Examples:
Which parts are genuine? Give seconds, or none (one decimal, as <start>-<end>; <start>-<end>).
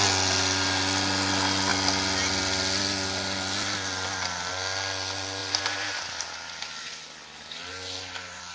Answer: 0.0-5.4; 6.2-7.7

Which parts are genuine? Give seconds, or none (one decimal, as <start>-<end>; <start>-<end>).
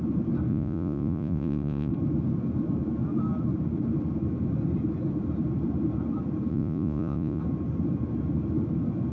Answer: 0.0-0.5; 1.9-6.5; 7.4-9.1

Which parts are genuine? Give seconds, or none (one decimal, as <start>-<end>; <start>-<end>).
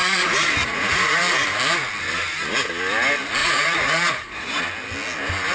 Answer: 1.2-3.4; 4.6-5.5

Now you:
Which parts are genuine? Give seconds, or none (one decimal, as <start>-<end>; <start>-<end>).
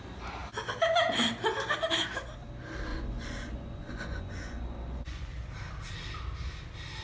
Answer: 0.0-2.9; 5.5-7.0